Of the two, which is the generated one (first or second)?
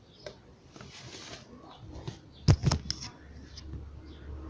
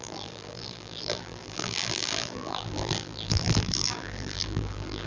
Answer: second